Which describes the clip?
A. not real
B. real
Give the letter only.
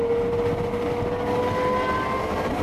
B